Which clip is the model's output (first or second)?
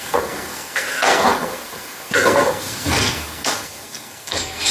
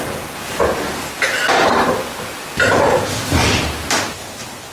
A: first